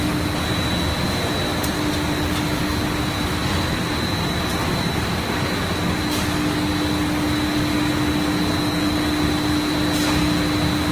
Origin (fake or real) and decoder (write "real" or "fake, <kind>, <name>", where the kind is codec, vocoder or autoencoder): real